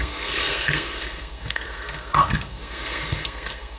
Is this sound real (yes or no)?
no